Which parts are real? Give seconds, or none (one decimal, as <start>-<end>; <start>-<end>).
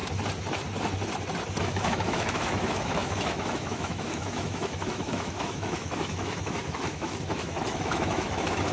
0.0-1.6